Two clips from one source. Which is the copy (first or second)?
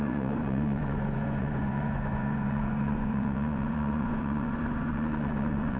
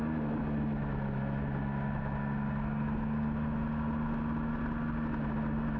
first